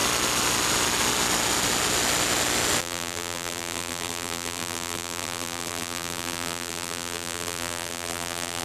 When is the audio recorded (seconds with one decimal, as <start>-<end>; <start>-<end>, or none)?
0.0-2.8